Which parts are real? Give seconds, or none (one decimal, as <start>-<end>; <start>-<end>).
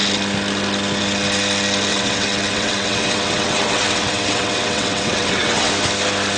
0.0-1.9; 5.7-6.4